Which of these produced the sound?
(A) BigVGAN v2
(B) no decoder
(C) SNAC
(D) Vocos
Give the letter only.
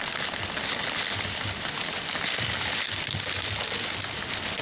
B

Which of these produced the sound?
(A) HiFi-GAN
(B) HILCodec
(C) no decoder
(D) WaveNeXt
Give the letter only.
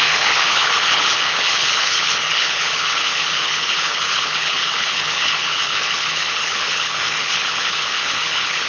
B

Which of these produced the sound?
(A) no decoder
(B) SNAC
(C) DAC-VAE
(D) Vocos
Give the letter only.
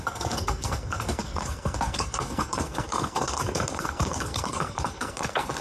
B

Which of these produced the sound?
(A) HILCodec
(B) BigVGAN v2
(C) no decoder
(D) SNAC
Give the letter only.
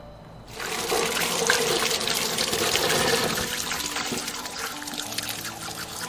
C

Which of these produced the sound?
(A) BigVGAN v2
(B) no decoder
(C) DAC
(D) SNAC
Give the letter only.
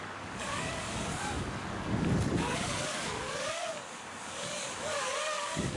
C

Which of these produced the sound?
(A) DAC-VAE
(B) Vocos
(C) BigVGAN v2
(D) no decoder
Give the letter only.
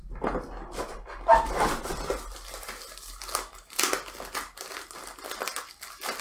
D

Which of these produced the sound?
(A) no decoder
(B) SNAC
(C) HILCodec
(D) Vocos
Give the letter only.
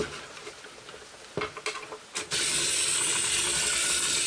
A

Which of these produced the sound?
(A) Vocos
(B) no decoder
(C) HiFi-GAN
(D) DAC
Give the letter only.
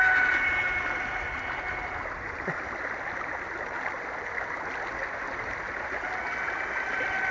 B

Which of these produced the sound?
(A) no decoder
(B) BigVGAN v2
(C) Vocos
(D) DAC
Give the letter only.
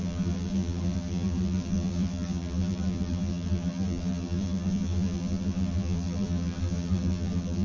B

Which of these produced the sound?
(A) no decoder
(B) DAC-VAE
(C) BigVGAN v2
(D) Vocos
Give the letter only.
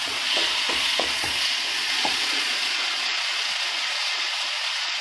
D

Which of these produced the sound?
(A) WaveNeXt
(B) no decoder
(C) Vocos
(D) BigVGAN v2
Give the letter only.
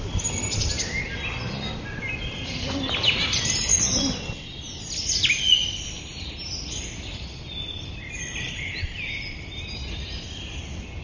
B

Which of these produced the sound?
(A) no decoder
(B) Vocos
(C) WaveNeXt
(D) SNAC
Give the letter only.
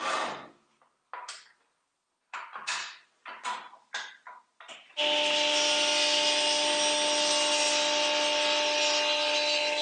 A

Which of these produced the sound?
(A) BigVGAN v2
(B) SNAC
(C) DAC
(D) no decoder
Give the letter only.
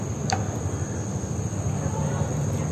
D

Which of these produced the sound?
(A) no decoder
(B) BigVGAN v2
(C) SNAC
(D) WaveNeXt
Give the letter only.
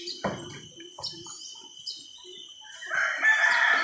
A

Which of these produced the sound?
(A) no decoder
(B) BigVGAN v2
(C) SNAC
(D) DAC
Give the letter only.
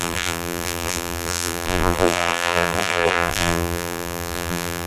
B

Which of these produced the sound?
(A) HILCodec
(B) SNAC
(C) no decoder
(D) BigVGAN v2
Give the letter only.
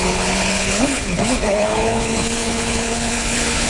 A